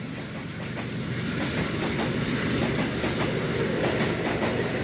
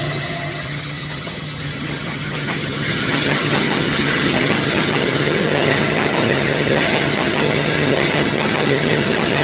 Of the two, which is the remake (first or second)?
second